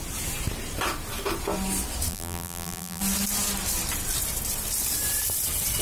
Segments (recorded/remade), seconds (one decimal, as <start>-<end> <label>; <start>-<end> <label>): 0.0-2.1 recorded; 2.1-3.0 remade; 3.0-5.8 recorded